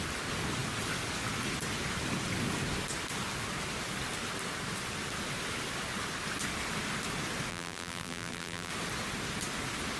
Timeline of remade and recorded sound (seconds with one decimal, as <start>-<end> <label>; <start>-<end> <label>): 0.0-7.5 recorded; 7.5-8.7 remade; 8.7-10.0 recorded